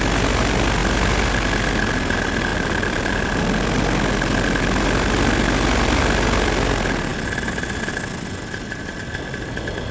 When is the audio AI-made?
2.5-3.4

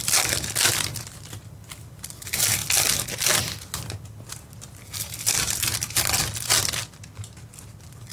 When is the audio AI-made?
none